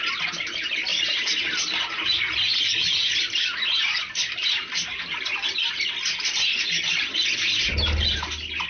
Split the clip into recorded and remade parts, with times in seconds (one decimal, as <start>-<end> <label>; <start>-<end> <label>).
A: 0.0-8.7 recorded